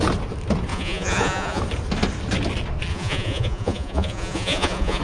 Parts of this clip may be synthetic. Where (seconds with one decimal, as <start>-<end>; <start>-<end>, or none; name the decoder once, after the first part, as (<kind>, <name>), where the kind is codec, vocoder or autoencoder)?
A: 0.7-1.6 (vocoder, Vocos); 2.9-5.0